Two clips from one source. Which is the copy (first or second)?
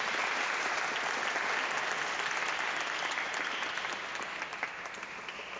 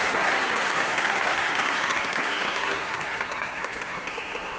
second